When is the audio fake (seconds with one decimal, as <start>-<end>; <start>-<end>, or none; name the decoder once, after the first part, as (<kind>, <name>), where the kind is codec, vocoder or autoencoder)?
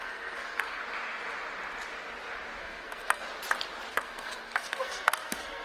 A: 0.0-0.8 (codec, SNAC); 2.6-3.2; 3.9-5.6